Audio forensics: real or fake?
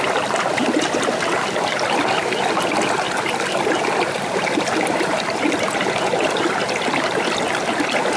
real